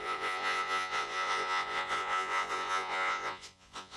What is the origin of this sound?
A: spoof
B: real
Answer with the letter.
A